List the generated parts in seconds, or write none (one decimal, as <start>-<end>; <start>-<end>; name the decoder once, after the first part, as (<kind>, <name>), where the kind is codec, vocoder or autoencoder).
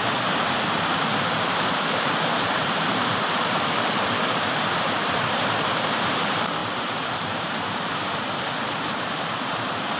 0.0-10.0 (vocoder, BigVGAN v2)